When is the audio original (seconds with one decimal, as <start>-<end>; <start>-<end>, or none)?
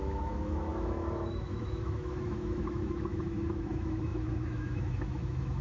none